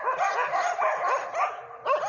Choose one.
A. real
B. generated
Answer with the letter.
A